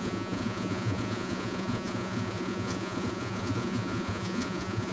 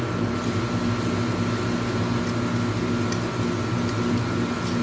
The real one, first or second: second